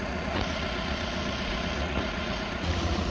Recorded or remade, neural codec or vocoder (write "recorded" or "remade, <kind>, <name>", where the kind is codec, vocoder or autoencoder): remade, vocoder, Vocos